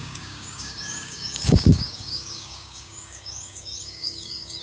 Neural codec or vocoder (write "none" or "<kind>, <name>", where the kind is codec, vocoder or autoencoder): codec, DAC